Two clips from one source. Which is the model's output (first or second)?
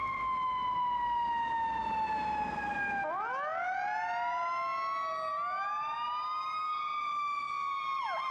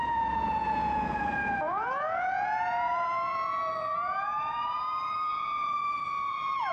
second